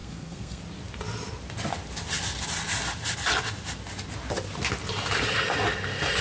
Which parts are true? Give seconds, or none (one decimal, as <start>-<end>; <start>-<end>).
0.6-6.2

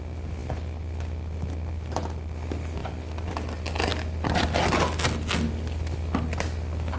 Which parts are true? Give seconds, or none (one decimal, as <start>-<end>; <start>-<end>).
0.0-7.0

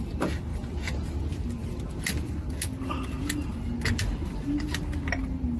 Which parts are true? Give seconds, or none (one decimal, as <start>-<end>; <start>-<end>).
0.0-5.6

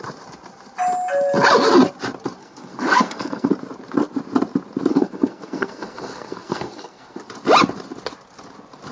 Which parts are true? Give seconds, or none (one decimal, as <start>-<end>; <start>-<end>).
0.0-2.4; 3.5-4.9; 7.2-8.9

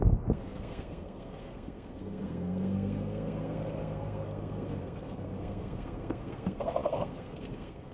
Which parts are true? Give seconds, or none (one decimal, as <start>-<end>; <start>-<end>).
none

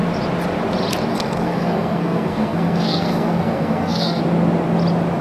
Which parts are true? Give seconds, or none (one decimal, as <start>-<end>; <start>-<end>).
0.0-1.1; 4.2-5.2